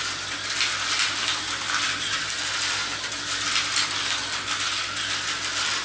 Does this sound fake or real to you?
real